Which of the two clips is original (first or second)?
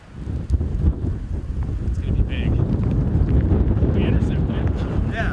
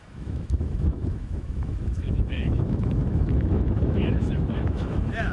first